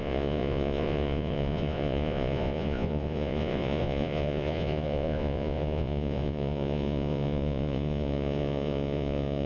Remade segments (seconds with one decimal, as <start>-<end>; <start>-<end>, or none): 0.0-9.5